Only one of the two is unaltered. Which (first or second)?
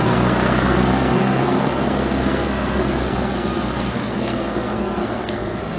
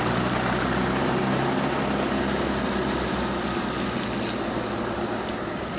second